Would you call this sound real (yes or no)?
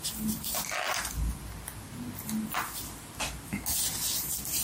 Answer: yes